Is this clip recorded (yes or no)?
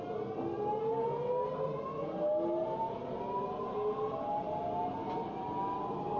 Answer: yes